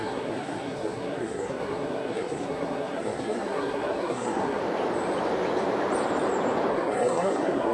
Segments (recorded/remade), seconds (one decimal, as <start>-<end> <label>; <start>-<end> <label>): 0.0-4.6 remade; 4.6-6.7 recorded; 6.7-7.7 remade